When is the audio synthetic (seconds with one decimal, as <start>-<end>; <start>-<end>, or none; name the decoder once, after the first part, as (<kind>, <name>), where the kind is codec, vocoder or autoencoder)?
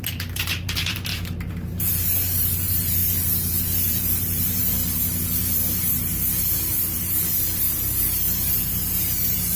0.0-4.8 (vocoder, BigVGAN v2); 7.6-9.6